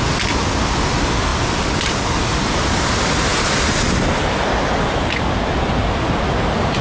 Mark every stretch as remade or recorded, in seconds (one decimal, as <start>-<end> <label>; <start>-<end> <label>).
0.0-6.8 recorded